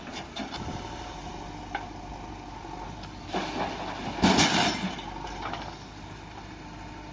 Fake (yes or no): no